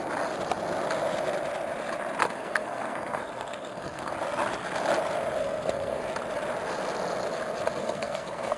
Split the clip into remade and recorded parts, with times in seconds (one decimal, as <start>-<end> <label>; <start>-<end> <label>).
0.0-2.2 recorded; 2.2-4.1 remade; 4.1-5.4 recorded; 5.4-6.0 remade; 6.0-7.8 recorded; 7.8-8.6 remade